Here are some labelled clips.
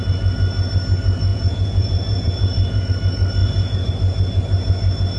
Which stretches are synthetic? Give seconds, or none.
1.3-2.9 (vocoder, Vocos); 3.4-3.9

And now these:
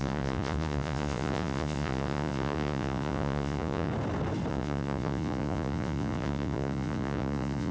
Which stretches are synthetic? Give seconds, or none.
0.0-3.9 (vocoder, Vocos); 4.5-7.7

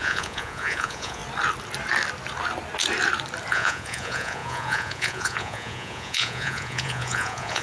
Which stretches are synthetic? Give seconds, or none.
0.0-1.2 (vocoder, Vocos); 3.5-7.6

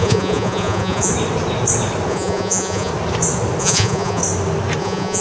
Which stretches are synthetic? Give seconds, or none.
0.0-1.1 (vocoder, Vocos); 2.1-2.9; 3.6-4.2; 4.8-5.2